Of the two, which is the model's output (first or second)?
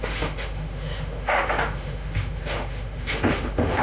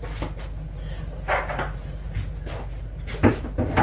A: first